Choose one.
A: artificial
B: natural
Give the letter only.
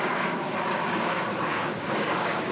A